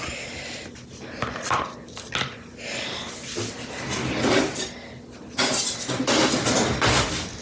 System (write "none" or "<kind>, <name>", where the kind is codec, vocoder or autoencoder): none